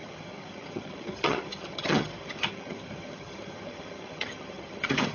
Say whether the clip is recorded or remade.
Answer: remade